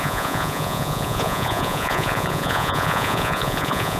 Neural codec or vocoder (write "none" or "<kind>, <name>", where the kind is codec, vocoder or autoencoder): vocoder, Vocos